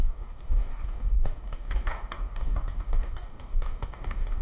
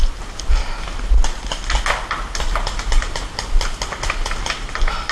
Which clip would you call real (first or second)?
second